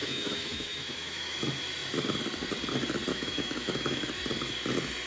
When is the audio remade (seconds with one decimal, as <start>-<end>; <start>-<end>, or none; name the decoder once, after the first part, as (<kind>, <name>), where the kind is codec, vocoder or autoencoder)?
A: 0.0-1.4 (autoencoder, DAC-VAE); 3.1-4.1